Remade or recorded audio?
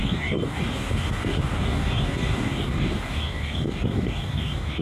remade